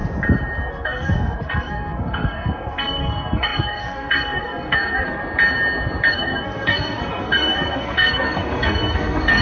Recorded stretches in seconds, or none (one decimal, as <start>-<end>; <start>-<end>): 0.0-0.7; 5.2-6.1